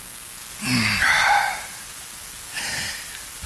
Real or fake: real